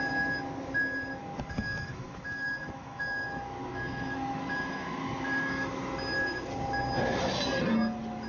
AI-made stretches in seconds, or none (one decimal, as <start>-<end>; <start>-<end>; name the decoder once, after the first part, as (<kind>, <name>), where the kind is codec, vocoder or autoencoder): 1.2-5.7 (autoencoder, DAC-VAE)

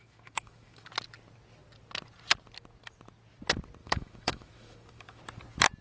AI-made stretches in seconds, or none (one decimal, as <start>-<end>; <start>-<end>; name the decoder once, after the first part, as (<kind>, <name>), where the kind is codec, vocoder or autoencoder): 0.0-0.9 (autoencoder, DAC-VAE); 3.8-5.2

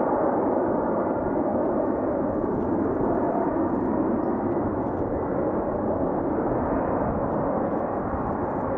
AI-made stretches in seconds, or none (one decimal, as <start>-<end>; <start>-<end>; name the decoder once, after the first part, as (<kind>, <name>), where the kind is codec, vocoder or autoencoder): none

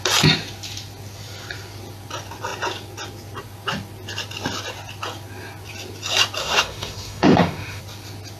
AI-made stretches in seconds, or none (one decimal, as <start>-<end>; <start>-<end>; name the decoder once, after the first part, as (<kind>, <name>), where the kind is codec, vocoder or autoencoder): 6.4-7.8 (autoencoder, DAC-VAE)